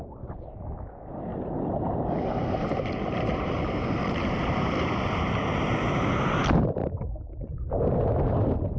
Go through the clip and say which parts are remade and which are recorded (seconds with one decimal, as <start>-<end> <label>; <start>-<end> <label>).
0.0-1.3 recorded; 1.3-6.2 remade; 6.2-8.8 recorded